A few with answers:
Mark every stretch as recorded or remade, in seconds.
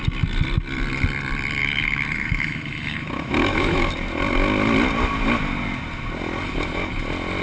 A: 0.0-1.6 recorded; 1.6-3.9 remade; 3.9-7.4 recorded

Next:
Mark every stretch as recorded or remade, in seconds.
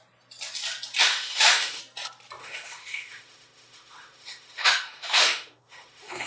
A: 0.0-1.1 recorded; 1.1-1.8 remade; 1.8-2.4 recorded; 2.4-6.3 remade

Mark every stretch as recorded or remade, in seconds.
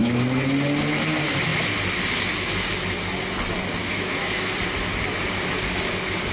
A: 0.0-0.5 remade; 0.5-3.8 recorded; 3.8-4.5 remade; 4.5-6.3 recorded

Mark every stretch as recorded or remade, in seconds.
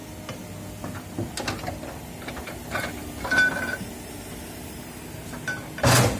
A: 0.0-6.2 recorded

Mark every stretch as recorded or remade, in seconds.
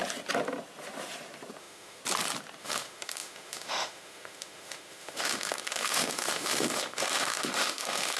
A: 0.0-1.6 recorded; 1.6-2.0 remade; 2.0-2.6 recorded; 2.6-8.2 remade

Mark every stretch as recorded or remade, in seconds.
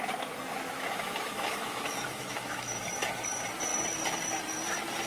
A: 0.0-0.5 recorded; 0.5-2.8 remade; 2.8-5.1 recorded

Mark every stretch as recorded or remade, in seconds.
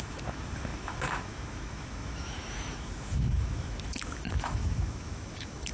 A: 0.0-5.7 remade